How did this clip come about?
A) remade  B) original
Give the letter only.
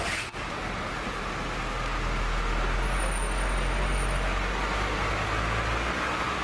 B